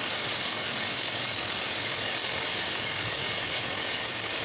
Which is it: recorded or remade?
remade